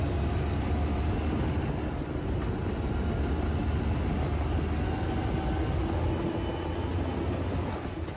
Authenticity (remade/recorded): recorded